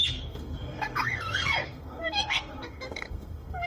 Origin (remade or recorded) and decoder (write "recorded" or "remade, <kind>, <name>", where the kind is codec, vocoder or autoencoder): remade, codec, SNAC